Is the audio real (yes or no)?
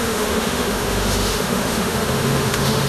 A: no